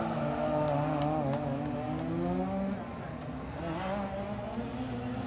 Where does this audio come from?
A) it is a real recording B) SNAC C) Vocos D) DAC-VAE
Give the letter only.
A